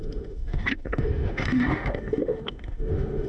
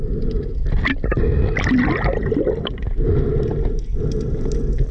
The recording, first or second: second